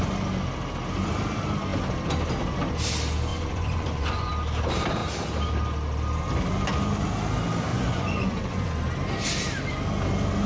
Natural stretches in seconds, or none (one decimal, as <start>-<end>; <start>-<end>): 0.0-3.3; 4.3-7.7; 8.7-10.5